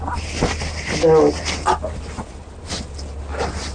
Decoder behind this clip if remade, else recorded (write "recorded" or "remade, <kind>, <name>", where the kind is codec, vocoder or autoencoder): recorded